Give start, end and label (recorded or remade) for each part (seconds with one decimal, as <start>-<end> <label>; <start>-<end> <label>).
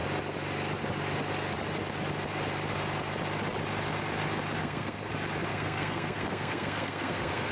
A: 0.0-4.6 recorded; 4.6-5.1 remade; 5.1-5.5 recorded; 5.5-7.5 remade